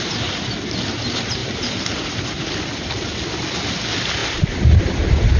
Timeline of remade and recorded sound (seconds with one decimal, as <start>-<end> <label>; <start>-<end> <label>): 0.0-1.4 recorded; 1.4-3.8 remade; 3.8-4.2 recorded; 4.2-5.0 remade; 5.0-5.4 recorded

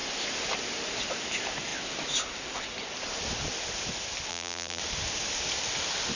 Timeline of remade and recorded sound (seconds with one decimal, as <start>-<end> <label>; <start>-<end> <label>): 0.0-4.3 recorded; 4.3-4.8 remade; 4.8-6.2 recorded